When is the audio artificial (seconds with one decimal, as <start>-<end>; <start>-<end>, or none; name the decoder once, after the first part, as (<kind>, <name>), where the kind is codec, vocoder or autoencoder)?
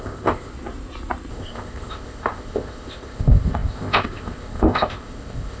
0.0-0.5 (codec, ZipCodec); 1.3-5.6